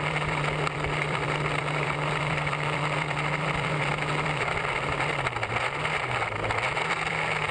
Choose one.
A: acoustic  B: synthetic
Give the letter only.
B